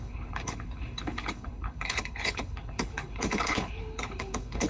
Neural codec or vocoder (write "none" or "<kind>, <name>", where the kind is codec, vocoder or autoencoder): codec, HILCodec